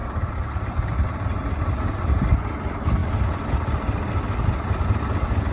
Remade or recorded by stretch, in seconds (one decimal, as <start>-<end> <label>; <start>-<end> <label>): 0.0-5.5 recorded